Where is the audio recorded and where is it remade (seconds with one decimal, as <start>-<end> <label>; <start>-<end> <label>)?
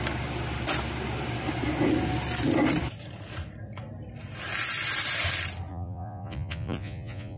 0.0-5.7 recorded; 5.7-7.4 remade